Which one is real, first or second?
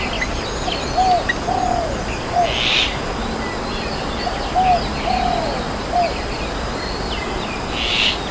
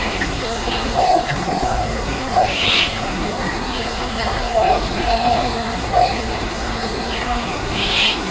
first